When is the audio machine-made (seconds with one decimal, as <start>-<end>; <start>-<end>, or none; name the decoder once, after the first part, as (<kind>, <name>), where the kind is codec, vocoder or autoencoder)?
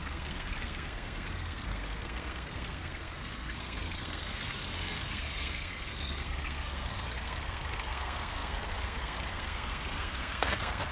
0.0-10.9 (codec, SNAC)